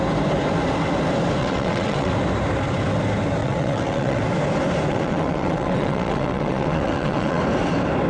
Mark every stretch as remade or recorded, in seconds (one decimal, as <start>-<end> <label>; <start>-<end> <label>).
0.0-1.4 recorded; 1.4-2.1 remade; 2.1-3.4 recorded; 3.4-4.2 remade; 4.2-4.9 recorded; 4.9-7.4 remade; 7.4-8.1 recorded